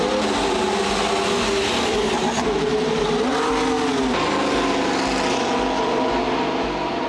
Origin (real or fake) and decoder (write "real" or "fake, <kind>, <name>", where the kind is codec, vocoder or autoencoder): real